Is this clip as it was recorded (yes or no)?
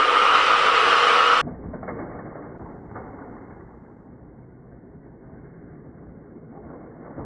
yes